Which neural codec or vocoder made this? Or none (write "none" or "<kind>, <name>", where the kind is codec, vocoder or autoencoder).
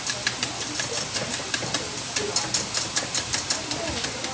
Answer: none